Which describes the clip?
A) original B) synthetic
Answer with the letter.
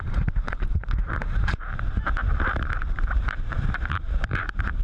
B